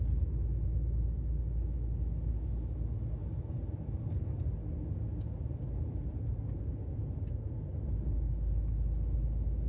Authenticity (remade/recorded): recorded